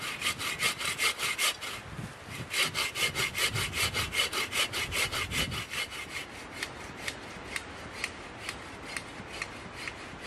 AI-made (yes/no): no